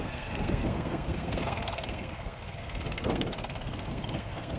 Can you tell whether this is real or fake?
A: fake